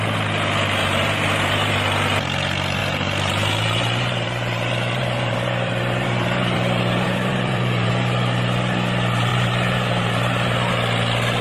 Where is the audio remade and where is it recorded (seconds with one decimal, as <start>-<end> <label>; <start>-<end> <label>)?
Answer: 0.0-0.8 recorded; 0.8-1.7 remade; 1.7-2.8 recorded; 2.8-7.9 remade; 7.9-9.3 recorded; 9.3-10.7 remade; 10.7-11.4 recorded